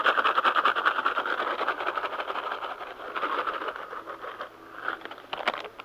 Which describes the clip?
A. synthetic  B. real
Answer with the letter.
B